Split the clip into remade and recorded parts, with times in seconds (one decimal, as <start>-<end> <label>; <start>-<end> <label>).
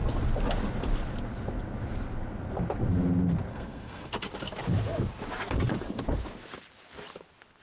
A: 0.0-3.5 recorded; 3.5-4.1 remade; 4.1-7.6 recorded